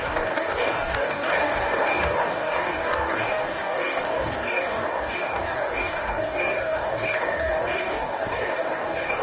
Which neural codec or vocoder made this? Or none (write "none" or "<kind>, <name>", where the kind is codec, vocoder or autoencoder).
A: codec, DAC